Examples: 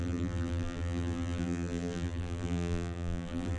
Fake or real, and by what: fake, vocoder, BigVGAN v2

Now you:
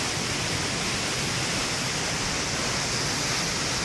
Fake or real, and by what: real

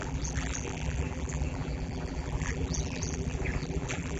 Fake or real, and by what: fake, vocoder, BigVGAN v2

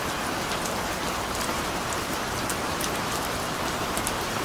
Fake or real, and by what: fake, vocoder, BigVGAN v2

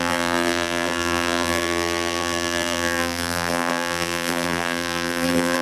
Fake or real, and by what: fake, vocoder, BigVGAN v2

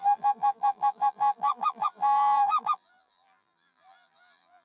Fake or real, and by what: fake, vocoder, BigVGAN v2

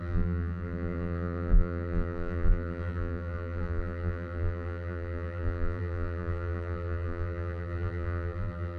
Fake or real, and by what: fake, vocoder, BigVGAN v2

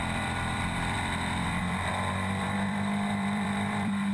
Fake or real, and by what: fake, vocoder, BigVGAN v2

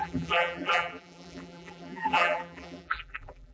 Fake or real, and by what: fake, vocoder, BigVGAN v2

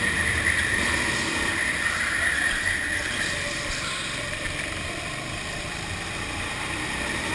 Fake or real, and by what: fake, vocoder, BigVGAN v2